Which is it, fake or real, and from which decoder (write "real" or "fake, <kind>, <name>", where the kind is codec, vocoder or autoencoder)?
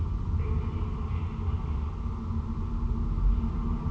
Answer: real